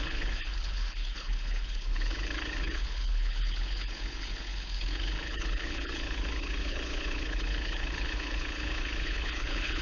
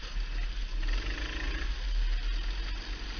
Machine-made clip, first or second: first